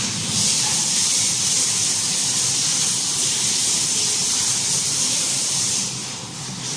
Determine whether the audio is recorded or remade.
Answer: remade